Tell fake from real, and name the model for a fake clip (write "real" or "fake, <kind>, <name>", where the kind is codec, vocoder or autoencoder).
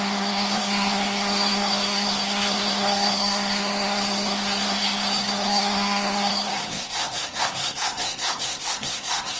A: fake, codec, SNAC